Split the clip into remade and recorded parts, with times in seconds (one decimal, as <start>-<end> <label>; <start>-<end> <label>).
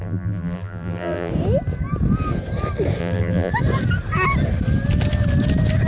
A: 0.0-1.3 remade; 1.3-3.0 recorded; 3.0-3.5 remade; 3.5-5.9 recorded